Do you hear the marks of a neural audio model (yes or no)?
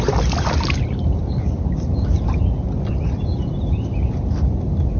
no